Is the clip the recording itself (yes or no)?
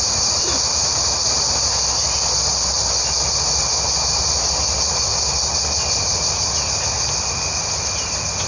yes